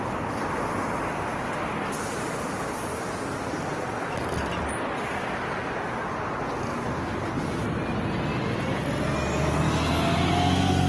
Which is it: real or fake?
real